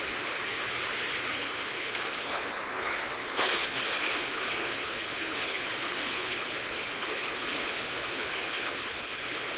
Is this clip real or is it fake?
fake